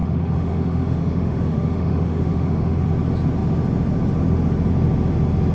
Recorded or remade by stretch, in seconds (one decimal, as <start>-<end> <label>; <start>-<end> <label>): 0.0-2.9 remade; 2.9-5.5 recorded